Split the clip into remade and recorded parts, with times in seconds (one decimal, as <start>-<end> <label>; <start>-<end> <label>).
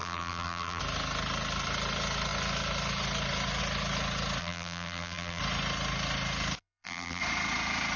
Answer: 0.0-0.8 remade; 0.8-4.4 recorded; 4.4-5.4 remade; 5.4-6.6 recorded; 6.6-7.2 remade; 7.2-8.0 recorded